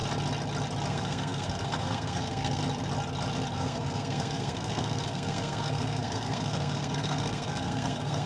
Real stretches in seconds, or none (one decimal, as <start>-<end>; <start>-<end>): 0.0-0.9; 2.6-3.5